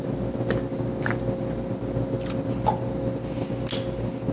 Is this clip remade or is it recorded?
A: recorded